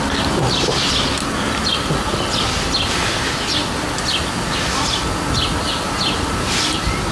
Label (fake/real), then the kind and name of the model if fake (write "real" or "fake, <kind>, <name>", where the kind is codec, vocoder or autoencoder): real